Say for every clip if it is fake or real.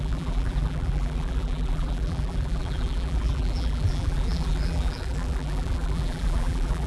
fake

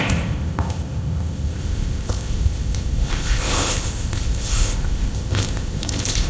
fake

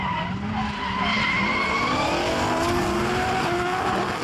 real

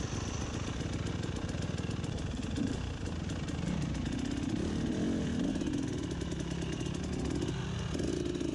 real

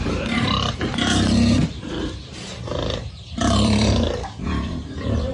fake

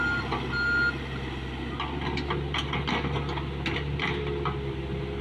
real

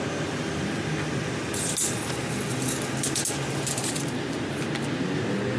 real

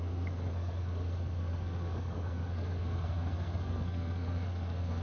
fake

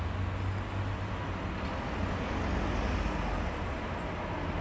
real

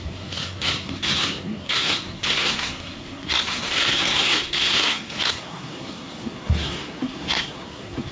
fake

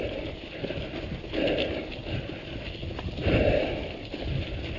real